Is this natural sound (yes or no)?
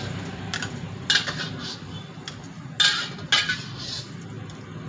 yes